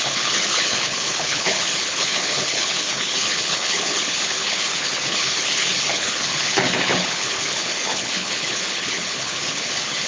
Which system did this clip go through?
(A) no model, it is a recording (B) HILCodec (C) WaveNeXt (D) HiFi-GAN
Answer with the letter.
B